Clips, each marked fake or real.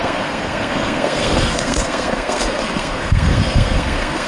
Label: fake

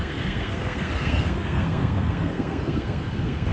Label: fake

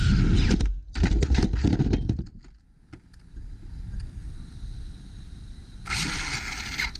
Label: real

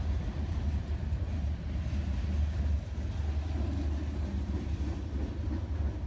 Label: real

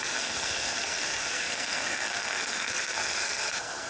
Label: fake